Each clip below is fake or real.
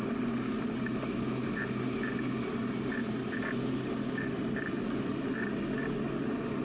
real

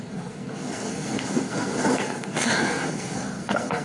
fake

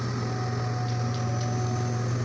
real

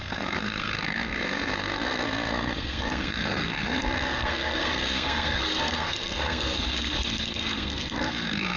fake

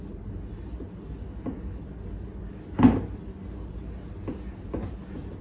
real